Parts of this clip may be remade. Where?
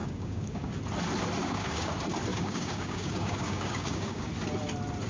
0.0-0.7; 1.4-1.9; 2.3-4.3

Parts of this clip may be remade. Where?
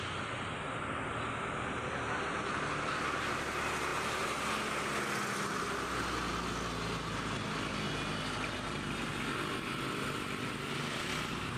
none